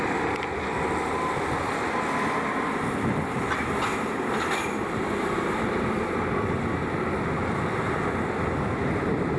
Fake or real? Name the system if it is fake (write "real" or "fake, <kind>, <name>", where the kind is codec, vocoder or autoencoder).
real